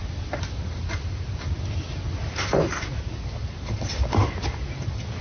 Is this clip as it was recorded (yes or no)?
yes